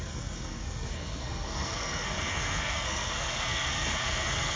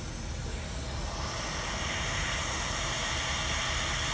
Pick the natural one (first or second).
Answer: second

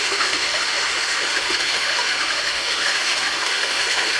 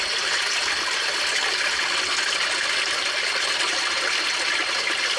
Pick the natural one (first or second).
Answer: second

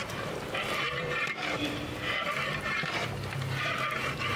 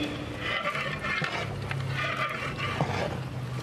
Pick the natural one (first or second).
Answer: second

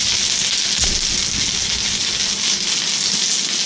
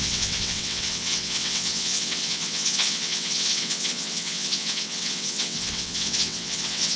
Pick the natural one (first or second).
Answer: first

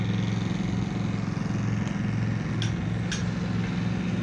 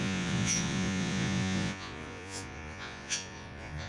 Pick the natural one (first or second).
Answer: first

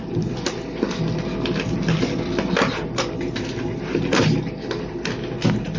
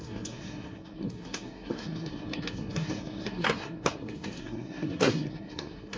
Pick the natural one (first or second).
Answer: first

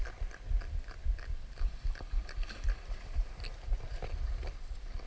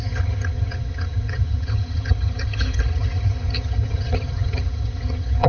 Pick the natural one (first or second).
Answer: first